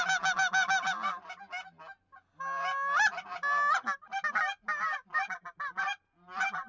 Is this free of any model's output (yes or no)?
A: yes